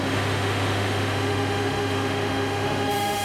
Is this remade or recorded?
remade